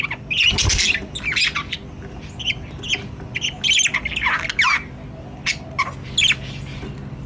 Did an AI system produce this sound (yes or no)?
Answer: no